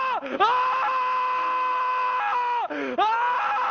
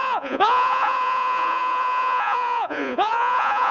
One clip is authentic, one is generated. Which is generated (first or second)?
second